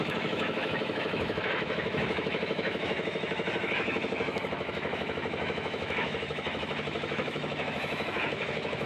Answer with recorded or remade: remade